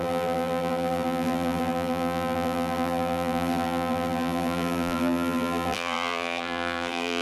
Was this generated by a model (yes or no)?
yes